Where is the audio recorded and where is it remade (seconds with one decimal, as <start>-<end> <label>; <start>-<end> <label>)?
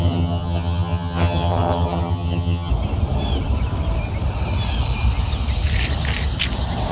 0.0-2.7 remade; 2.7-6.9 recorded